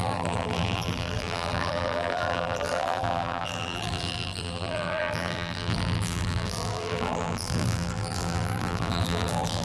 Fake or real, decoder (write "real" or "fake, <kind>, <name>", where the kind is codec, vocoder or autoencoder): fake, vocoder, BigVGAN v2